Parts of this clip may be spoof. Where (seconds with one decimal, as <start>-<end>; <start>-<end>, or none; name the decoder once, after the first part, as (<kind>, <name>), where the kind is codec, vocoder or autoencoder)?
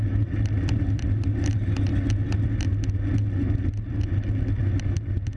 none